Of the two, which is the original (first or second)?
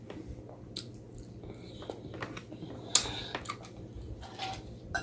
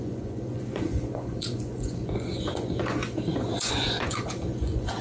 first